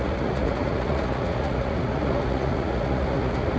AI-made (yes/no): yes